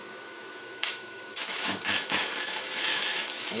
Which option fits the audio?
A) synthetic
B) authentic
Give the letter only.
A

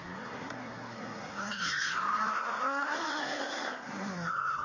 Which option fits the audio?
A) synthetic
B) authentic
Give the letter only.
A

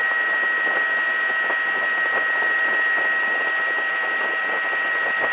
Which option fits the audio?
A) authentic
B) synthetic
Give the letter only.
A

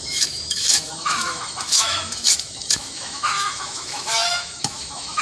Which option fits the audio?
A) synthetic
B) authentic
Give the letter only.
A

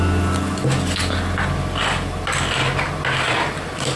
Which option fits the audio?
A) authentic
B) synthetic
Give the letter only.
A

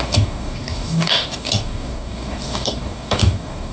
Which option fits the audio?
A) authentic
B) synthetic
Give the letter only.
B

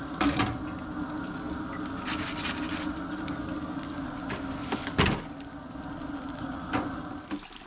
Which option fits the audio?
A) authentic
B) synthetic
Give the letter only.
A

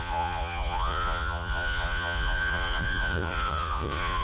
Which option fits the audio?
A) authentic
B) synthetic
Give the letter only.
B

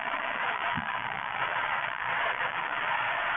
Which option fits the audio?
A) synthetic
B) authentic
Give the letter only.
A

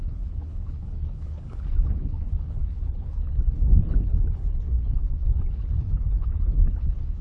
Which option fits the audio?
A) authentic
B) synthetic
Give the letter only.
B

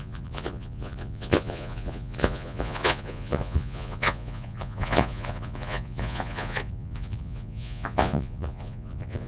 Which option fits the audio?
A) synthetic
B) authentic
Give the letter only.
A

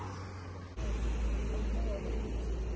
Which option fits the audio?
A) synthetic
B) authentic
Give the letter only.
B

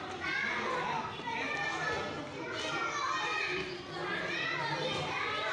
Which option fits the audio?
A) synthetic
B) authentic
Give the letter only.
B